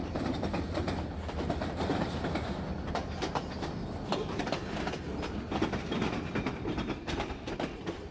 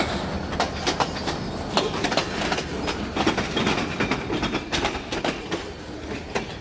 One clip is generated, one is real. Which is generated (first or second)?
first